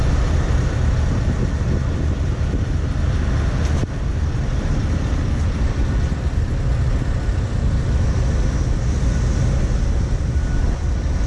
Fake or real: real